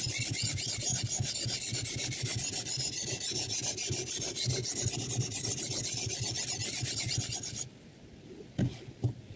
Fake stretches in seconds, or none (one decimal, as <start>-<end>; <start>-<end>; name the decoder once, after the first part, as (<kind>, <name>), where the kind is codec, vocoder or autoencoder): none